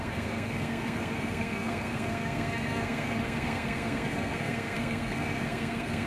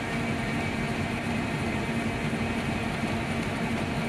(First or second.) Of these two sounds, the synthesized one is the first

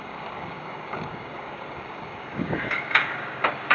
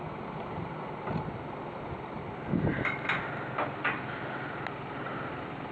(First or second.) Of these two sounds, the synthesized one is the first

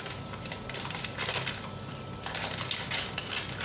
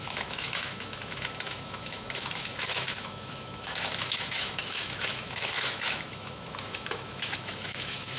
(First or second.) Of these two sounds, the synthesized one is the second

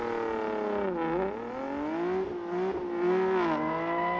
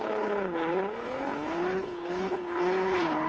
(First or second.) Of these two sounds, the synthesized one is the second